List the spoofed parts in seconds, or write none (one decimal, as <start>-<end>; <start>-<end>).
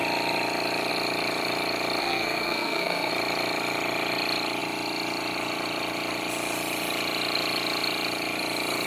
2.0-3.1